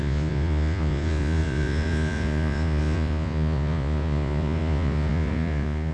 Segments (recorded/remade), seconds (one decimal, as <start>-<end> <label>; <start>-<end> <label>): 0.0-5.9 remade